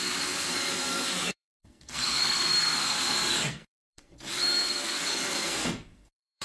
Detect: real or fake fake